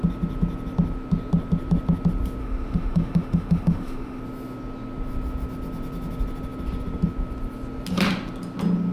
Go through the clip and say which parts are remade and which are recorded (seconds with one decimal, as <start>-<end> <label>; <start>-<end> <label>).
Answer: 0.0-2.4 recorded; 2.4-4.2 remade; 4.2-8.9 recorded